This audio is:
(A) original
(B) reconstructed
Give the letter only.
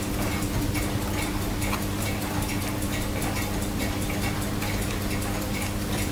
A